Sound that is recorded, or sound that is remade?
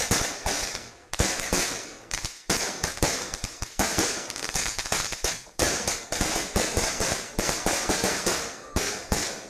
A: remade